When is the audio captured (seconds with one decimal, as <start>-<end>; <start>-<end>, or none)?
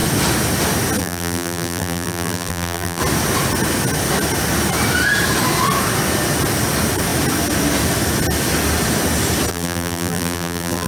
0.0-1.0; 3.0-9.5